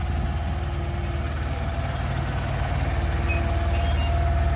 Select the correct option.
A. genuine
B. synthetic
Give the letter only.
A